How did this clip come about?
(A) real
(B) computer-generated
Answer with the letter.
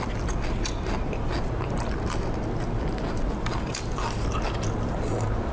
A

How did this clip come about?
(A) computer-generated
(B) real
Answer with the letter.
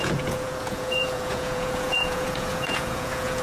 A